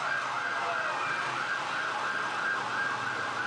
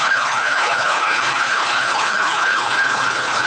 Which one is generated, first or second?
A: second